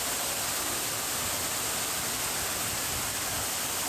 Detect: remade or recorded recorded